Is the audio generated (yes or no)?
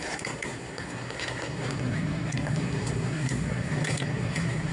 yes